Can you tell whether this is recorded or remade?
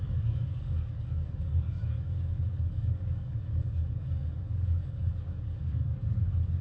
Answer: remade